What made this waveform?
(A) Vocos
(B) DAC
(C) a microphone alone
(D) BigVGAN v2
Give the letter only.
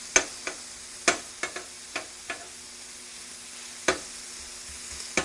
C